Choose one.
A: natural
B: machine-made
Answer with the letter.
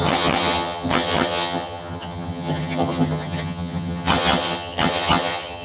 B